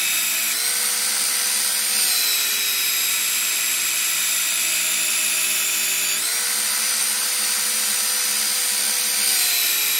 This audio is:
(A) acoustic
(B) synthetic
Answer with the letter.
A